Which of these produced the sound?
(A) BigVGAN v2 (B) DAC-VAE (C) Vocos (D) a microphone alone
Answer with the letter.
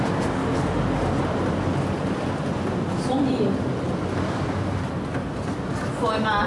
D